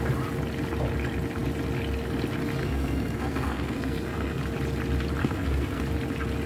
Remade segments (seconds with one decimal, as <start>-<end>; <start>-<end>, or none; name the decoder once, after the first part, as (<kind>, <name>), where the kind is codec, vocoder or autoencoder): 2.6-4.4 (codec, SNAC); 5.2-5.8